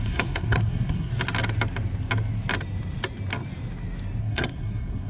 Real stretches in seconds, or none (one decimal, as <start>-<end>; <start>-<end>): 1.1-4.2